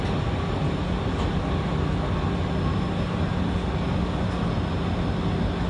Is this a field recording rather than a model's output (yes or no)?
yes